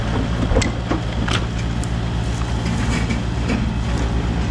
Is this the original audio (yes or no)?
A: yes